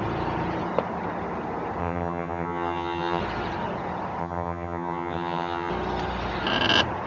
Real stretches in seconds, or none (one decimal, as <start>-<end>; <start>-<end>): 0.0-1.8; 3.2-4.2; 5.7-7.1